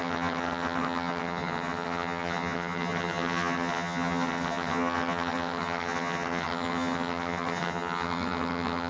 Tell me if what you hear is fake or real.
fake